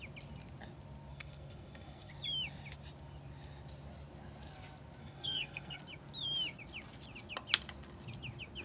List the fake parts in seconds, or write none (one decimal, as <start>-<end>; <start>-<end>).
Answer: 1.1-2.1; 5.0-5.8